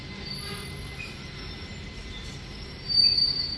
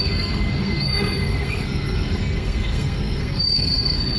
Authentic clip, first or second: first